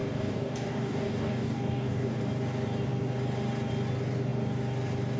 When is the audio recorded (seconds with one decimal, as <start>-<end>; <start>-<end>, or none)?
2.2-5.2